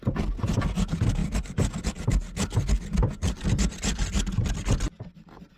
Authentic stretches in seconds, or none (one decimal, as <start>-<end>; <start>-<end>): 0.0-5.6

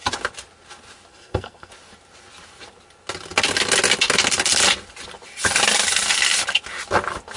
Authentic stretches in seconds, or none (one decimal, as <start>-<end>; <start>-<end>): 0.0-1.1; 1.7-7.4

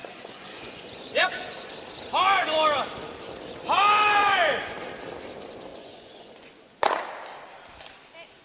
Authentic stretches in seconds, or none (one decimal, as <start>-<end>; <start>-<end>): 1.7-4.2; 4.7-5.7; 7.0-8.4

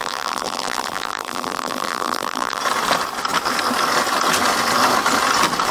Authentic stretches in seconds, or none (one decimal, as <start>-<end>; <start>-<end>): 2.6-5.7

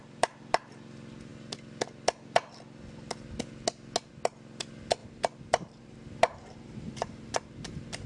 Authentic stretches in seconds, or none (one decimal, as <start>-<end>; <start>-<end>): 0.7-5.0

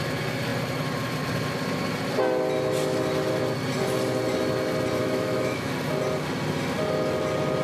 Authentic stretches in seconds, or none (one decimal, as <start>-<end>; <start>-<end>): 0.0-5.0; 5.7-7.6

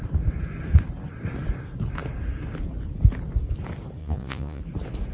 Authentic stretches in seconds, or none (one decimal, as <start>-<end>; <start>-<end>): 0.0-4.0; 4.6-5.1

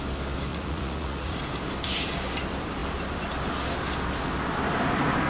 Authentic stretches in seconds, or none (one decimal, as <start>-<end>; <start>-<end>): 0.0-0.5; 1.4-5.3